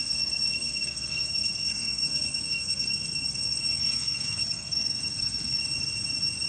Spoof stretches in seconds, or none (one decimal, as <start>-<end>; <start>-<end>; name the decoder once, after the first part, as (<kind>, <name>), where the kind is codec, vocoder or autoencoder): 0.0-5.6 (codec, SNAC)